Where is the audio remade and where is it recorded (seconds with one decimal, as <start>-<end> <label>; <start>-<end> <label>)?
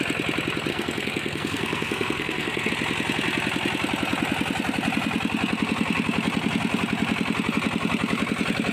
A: 0.0-0.7 recorded; 0.7-2.7 remade; 2.7-8.7 recorded